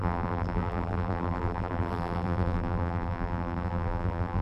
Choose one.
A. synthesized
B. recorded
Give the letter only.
A